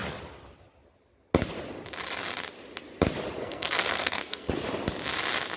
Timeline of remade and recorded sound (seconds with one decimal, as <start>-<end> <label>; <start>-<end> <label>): 0.0-3.4 recorded; 3.4-4.5 remade; 4.5-5.6 recorded